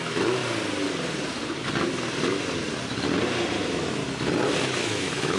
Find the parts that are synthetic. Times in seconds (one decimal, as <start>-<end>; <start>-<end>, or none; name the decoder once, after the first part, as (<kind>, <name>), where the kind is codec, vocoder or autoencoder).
0.0-0.4 (autoencoder, DAC-VAE); 3.6-4.0; 4.6-5.4